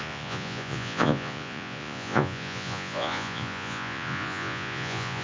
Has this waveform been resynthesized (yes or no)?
yes